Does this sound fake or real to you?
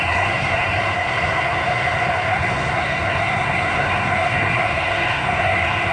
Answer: fake